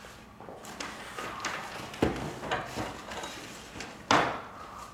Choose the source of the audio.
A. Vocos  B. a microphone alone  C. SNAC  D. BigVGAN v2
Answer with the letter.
B